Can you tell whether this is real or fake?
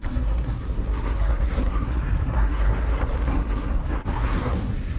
fake